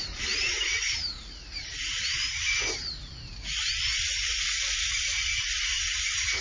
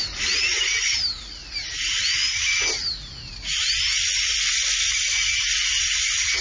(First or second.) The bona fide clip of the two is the second